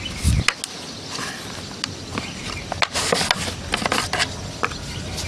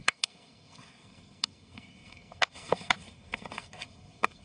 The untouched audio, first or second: first